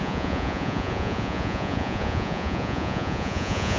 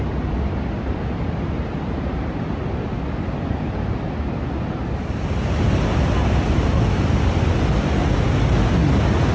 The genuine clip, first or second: second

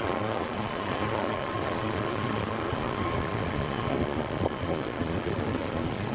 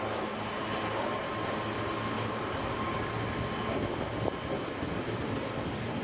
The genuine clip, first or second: second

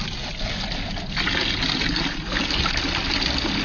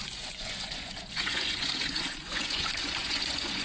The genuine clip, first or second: first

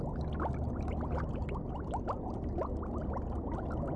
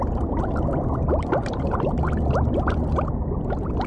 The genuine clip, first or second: first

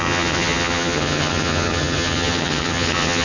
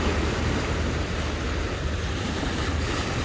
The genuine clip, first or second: second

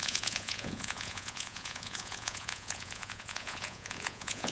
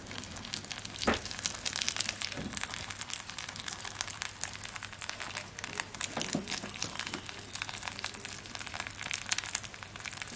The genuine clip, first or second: second